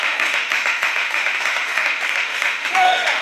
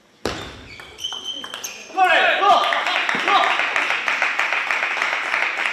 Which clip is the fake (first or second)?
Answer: first